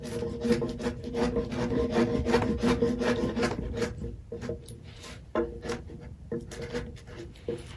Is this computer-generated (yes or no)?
no